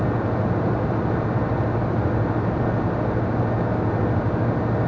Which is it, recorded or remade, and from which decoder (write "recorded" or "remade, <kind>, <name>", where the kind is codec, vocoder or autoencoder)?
recorded